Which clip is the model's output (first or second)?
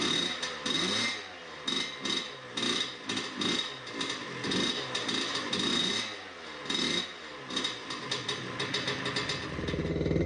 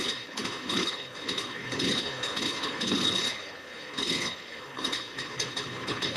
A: second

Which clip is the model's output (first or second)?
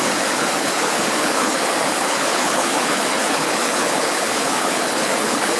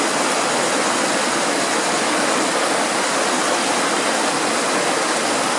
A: first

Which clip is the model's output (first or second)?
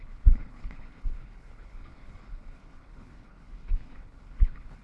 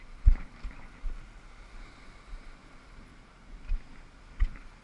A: first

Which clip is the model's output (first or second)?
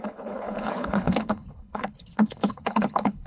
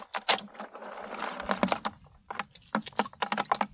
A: first